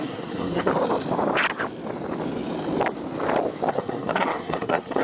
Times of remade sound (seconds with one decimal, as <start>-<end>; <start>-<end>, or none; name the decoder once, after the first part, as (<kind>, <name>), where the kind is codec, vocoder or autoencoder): 0.0-0.7 (codec, SNAC); 3.7-5.0